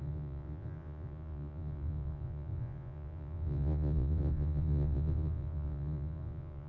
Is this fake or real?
fake